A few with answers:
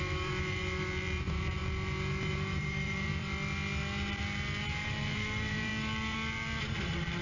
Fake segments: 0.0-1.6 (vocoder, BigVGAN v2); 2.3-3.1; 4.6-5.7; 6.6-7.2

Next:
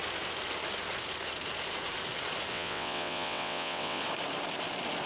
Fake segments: 2.5-4.0 (vocoder, WaveNeXt)

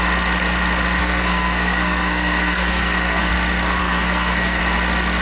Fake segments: 1.0-3.3 (codec, SNAC); 3.8-4.6

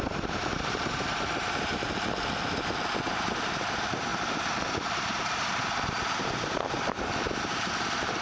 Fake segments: 0.0-2.1 (vocoder, BigVGAN v2); 2.9-8.2

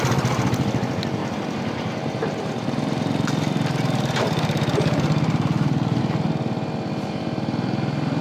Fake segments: 1.2-6.0 (vocoder, BigVGAN v2)

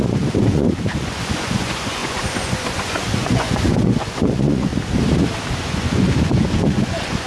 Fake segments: 0.0-4.7 (vocoder, Vocos); 5.6-7.3

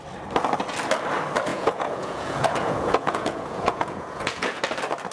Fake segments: 1.5-4.6 (vocoder, Vocos)